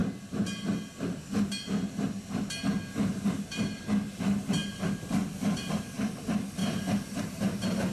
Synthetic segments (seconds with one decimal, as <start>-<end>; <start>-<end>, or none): 2.9-7.9